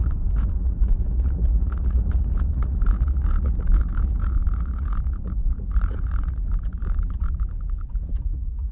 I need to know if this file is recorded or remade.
remade